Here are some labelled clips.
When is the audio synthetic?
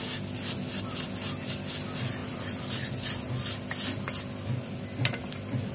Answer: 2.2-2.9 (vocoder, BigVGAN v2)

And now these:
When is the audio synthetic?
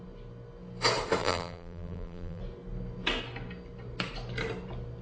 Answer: 1.2-2.4 (vocoder, BigVGAN v2)